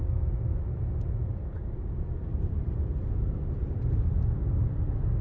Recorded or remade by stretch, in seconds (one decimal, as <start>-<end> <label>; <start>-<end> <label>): 0.0-5.2 recorded